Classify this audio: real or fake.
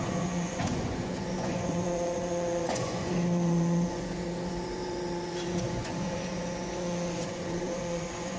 fake